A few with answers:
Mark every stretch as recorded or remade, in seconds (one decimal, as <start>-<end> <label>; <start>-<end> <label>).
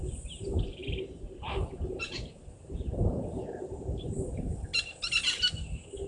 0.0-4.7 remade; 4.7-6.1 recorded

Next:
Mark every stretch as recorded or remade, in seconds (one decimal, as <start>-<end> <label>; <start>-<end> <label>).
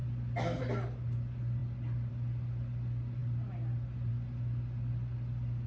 0.0-5.7 recorded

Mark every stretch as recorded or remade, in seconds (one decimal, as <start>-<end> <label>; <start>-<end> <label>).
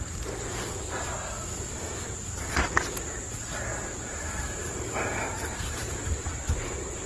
0.0-3.7 recorded; 3.7-6.1 remade; 6.1-7.1 recorded